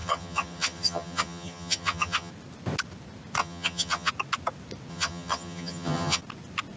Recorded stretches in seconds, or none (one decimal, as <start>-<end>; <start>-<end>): 2.3-3.4; 4.1-4.9; 6.2-6.8